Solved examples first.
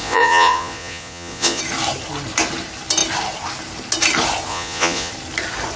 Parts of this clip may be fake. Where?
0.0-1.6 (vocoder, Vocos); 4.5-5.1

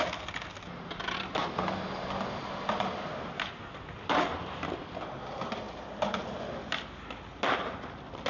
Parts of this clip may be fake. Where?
none

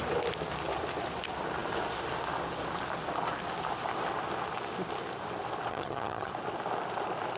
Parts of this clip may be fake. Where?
5.7-6.3 (vocoder, HiFi-GAN)

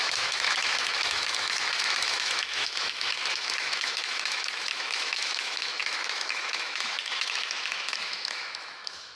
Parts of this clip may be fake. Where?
0.0-9.2 (autoencoder, DAC-VAE)